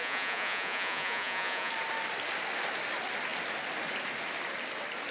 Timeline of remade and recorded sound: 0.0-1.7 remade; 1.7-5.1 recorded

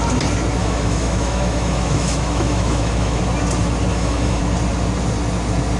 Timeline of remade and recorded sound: 0.0-0.6 recorded; 0.6-3.2 remade; 3.2-3.9 recorded; 3.9-4.4 remade; 4.4-5.8 recorded

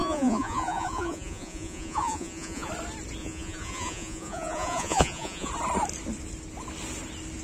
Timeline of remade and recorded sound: 0.0-2.7 remade; 2.7-3.2 recorded; 3.2-5.5 remade; 5.5-7.4 recorded

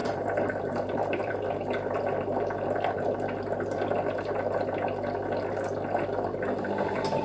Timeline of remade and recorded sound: 0.0-1.3 remade; 1.3-7.2 recorded